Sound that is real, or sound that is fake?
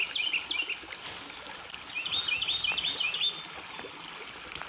real